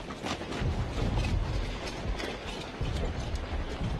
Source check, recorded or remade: recorded